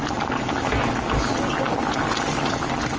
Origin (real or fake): real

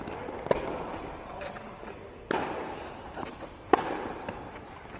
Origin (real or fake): real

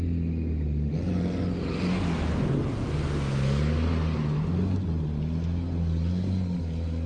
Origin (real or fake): real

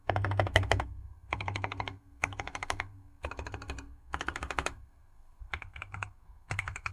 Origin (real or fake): fake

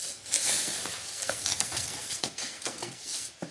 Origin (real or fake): fake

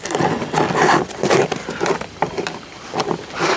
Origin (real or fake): real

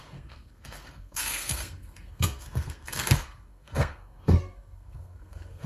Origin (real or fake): fake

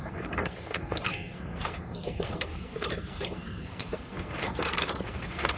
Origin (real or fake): fake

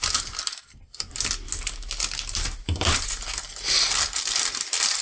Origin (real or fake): real